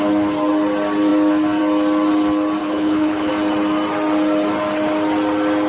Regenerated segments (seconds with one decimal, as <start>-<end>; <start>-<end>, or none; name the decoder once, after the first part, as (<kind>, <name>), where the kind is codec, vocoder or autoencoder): 2.6-3.3 (codec, HILCodec)